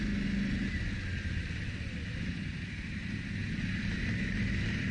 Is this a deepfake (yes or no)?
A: no